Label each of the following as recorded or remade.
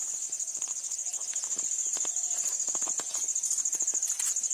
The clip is remade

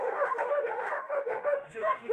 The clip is remade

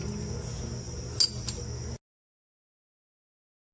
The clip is recorded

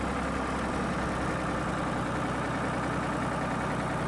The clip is recorded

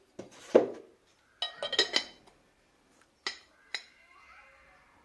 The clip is recorded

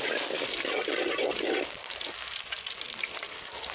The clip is recorded